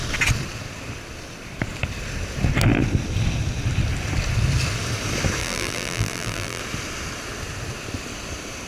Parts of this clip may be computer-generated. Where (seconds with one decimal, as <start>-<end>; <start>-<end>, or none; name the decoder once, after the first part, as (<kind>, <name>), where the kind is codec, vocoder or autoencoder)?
5.4-6.6 (vocoder, BigVGAN v2)